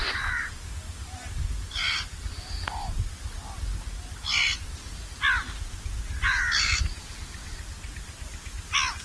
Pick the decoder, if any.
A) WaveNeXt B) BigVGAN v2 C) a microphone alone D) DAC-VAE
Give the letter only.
C